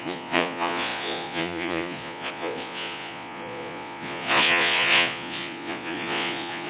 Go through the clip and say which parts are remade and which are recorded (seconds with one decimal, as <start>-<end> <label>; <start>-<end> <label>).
0.0-6.7 remade